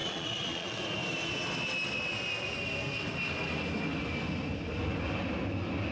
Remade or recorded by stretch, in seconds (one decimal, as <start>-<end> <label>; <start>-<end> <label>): 0.0-0.8 remade; 0.8-5.9 recorded